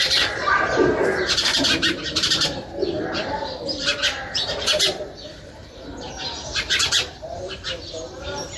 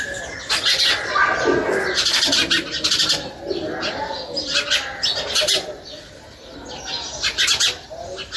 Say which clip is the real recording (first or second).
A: second